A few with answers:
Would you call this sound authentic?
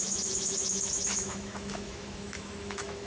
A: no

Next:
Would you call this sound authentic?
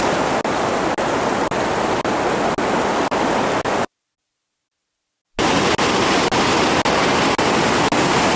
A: yes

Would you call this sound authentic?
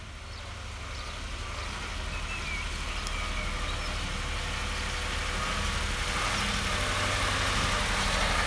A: yes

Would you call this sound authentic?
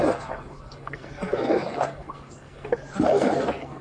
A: no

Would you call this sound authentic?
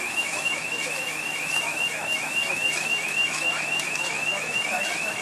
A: no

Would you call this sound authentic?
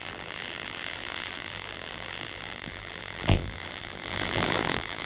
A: no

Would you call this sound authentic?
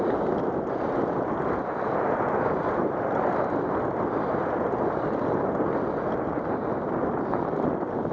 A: yes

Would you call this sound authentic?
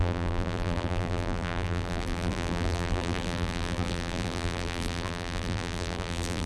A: no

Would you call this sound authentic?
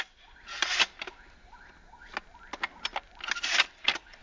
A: yes